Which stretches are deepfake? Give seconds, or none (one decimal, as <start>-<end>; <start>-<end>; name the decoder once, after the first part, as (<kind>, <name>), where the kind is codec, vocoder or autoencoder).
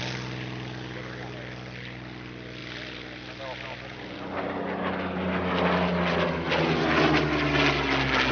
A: none